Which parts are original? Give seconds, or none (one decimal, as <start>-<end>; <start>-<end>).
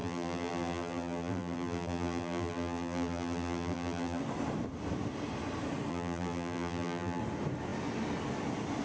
4.2-5.9; 7.2-8.8